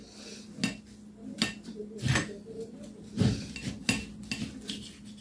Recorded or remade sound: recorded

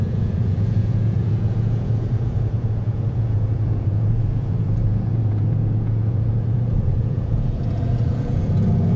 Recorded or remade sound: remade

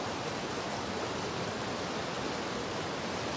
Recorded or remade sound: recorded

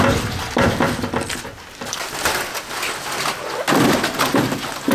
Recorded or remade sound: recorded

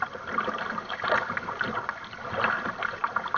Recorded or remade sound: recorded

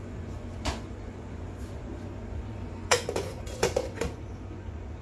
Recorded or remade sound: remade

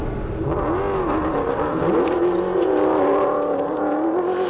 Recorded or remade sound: recorded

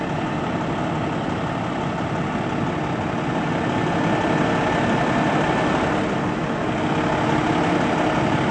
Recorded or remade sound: recorded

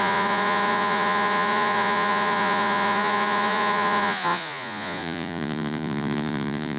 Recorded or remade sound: remade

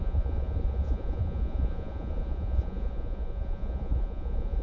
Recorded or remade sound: remade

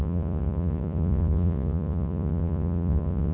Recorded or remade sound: remade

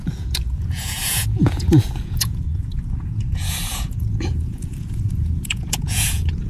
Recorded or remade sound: remade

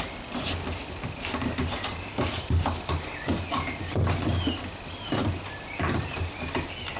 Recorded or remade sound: recorded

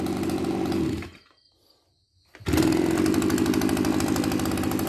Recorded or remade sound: recorded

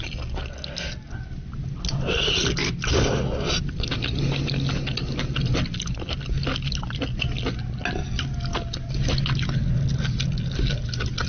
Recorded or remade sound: recorded